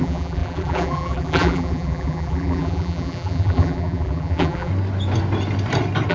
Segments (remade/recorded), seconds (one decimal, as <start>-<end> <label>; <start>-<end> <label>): 0.0-4.7 remade; 4.7-6.1 recorded